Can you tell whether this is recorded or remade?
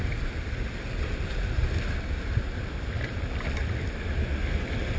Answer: recorded